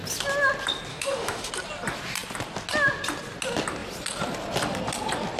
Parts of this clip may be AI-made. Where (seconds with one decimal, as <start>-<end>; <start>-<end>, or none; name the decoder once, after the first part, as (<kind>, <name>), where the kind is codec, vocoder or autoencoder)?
0.9-1.5 (autoencoder, DAC-VAE)